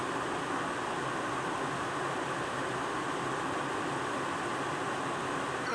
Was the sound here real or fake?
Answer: real